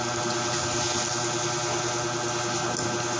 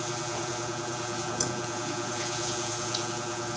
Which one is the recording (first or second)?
first